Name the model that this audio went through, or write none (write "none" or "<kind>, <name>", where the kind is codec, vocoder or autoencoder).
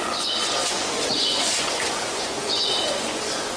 vocoder, Vocos